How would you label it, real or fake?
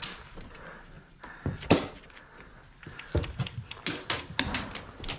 real